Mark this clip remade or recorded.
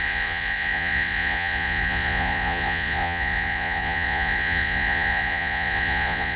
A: remade